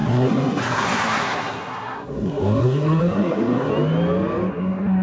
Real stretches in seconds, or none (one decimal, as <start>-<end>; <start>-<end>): 3.7-4.5

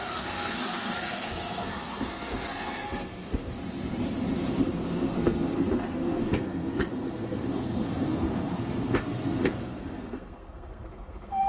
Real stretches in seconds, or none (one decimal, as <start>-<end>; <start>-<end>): 3.5-4.6

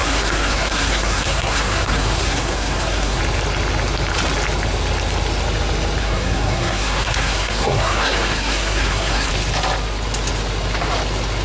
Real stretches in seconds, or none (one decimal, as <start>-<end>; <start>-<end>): 3.2-6.0; 9.3-11.4